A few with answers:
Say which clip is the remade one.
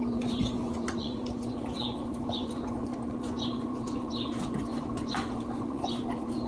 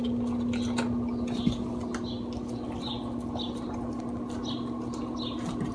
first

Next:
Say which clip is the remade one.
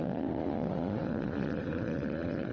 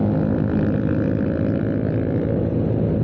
first